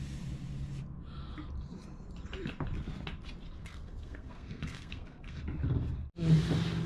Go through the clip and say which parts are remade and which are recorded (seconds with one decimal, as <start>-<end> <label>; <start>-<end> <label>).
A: 0.0-3.6 recorded; 3.6-5.4 remade; 5.4-6.9 recorded